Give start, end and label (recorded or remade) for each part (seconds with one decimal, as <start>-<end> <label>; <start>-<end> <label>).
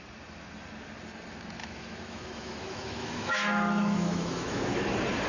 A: 0.0-1.6 recorded; 1.6-4.8 remade; 4.8-5.3 recorded